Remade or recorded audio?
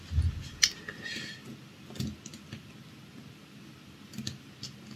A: recorded